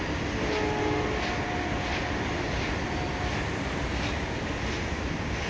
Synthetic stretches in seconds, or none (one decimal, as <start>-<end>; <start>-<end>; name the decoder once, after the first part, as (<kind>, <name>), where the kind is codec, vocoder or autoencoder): none